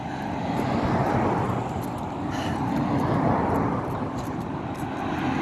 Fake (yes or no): no